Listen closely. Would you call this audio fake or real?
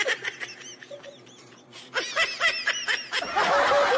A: real